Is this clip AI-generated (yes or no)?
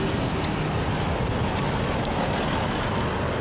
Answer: no